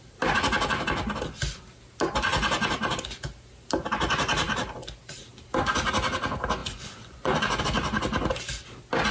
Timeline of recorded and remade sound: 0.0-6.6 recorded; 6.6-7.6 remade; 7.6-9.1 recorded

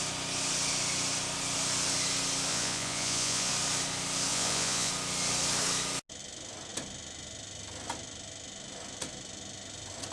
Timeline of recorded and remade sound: 0.0-2.5 recorded; 2.5-3.5 remade; 3.5-4.3 recorded; 4.3-4.9 remade; 4.9-10.1 recorded

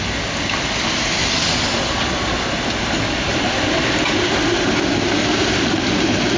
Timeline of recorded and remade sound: 0.0-3.3 recorded; 3.3-4.8 remade; 4.8-5.2 recorded; 5.2-5.7 remade; 5.7-6.4 recorded

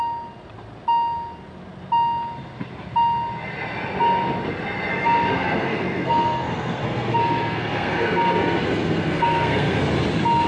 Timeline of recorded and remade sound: 0.0-4.9 recorded; 4.9-9.8 remade; 9.8-10.5 recorded